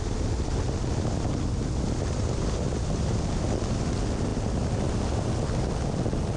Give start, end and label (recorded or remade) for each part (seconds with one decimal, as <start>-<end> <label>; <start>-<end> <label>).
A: 0.0-6.4 recorded